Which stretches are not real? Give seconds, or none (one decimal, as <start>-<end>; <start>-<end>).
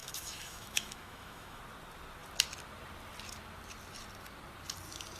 0.0-1.6